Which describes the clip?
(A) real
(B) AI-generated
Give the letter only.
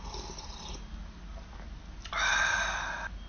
A